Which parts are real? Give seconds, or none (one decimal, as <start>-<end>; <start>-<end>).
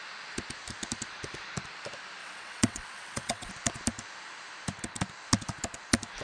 0.0-2.2; 3.5-6.2